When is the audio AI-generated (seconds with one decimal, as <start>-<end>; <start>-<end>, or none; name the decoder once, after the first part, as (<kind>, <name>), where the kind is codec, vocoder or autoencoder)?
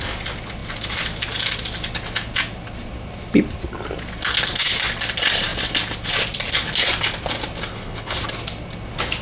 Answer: 7.7-8.2 (codec, HILCodec)